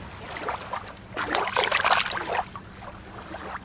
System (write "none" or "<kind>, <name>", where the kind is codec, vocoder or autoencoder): none